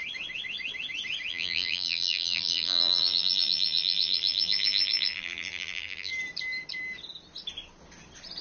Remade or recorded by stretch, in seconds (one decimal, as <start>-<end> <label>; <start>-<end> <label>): 0.0-1.3 recorded; 1.3-6.1 remade; 6.1-8.4 recorded